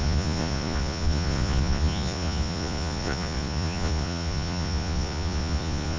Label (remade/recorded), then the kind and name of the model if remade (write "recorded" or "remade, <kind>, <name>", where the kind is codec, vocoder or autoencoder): remade, vocoder, Vocos